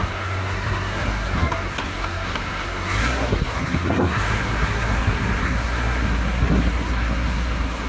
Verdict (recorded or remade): remade